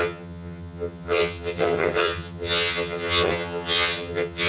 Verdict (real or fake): fake